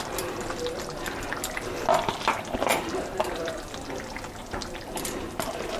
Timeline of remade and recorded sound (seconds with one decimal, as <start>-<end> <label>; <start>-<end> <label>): 0.0-2.7 recorded; 2.7-3.5 remade; 3.5-5.8 recorded